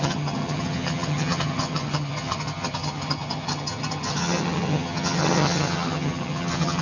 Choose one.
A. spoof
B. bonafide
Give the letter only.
A